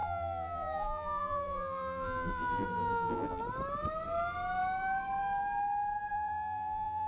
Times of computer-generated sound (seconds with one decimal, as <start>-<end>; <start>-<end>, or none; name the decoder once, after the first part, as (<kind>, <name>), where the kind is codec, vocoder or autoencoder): 0.0-3.4 (vocoder, BigVGAN v2); 6.1-7.1

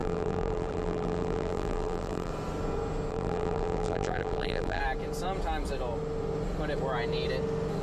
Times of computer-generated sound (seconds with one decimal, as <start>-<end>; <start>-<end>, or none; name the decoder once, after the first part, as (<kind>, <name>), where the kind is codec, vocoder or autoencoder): 0.0-2.3 (vocoder, BigVGAN v2); 3.1-4.8

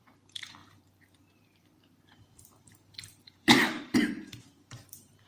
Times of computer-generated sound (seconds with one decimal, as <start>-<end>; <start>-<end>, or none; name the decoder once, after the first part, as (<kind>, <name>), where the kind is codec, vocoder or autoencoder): 0.0-5.3 (vocoder, BigVGAN v2)